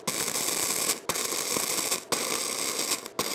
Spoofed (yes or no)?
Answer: no